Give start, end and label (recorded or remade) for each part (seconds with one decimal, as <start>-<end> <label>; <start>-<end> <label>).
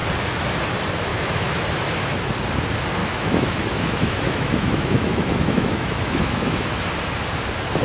0.0-1.1 recorded; 1.1-1.7 remade; 1.7-3.0 recorded; 3.0-6.8 remade; 6.8-7.8 recorded